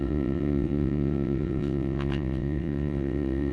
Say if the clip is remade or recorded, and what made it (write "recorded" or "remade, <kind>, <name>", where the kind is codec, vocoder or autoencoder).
remade, vocoder, WaveNeXt